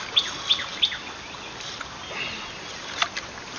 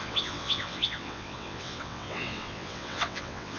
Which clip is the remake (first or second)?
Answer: second